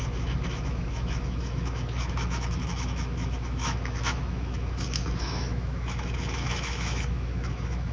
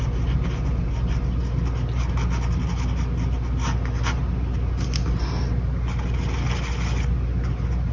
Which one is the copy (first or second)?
first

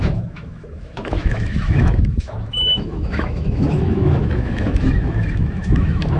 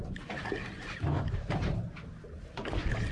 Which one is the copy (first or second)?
first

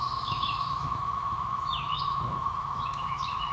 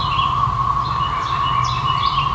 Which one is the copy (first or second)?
first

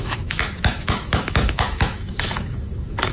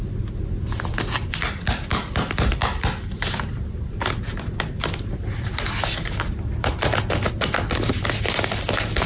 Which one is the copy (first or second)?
first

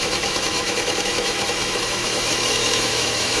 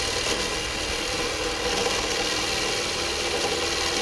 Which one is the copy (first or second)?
first